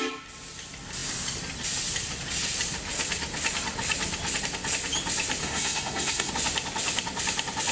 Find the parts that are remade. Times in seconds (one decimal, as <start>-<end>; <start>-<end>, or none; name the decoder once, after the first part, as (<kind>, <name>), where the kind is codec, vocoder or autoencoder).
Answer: 5.4-6.3 (codec, SNAC)